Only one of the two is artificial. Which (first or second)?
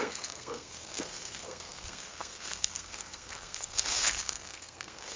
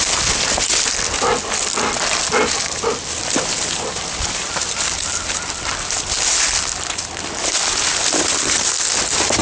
first